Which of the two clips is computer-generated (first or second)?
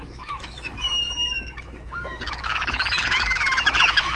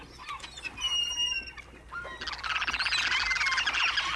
first